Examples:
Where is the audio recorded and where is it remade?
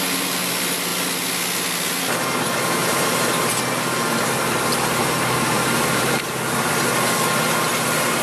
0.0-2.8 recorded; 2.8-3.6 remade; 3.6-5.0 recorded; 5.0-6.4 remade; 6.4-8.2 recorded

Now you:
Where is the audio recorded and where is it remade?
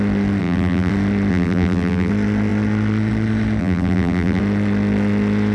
0.0-0.4 recorded; 0.4-0.9 remade; 0.9-1.3 recorded; 1.3-2.1 remade; 2.1-3.6 recorded; 3.6-4.4 remade; 4.4-5.5 recorded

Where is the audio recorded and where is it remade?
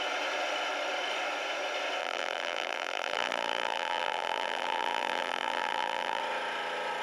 0.0-2.0 recorded; 2.0-6.2 remade; 6.2-7.0 recorded